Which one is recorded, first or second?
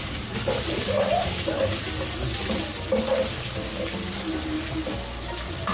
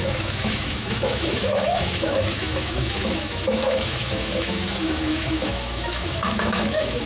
first